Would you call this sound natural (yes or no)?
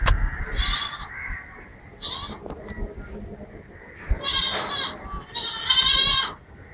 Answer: yes